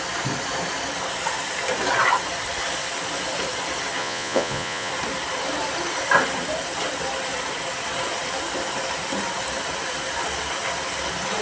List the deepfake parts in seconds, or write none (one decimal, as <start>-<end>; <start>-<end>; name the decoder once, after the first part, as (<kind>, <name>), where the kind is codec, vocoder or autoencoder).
4.0-4.9 (vocoder, Vocos)